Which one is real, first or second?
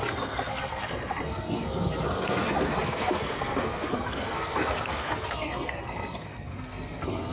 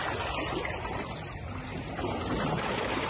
second